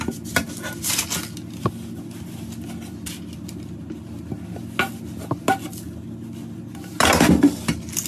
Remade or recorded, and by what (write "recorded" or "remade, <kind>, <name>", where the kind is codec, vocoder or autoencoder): recorded